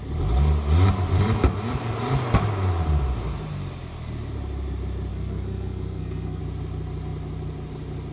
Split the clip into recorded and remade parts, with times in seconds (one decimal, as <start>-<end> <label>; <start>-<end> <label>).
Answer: 0.0-5.1 recorded; 5.1-6.4 remade; 6.4-8.1 recorded